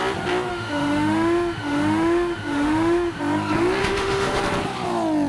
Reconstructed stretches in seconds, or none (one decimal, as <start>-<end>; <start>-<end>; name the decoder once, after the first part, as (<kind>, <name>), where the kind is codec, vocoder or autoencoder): 0.5-3.2 (autoencoder, DAC-VAE); 3.8-4.4